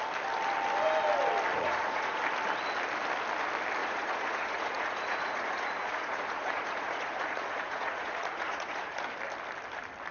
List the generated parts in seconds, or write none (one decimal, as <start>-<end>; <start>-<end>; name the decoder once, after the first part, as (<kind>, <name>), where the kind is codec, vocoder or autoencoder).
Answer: 1.5-2.2 (vocoder, Vocos); 3.8-9.0